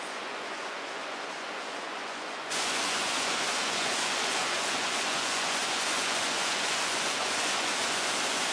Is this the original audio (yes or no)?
no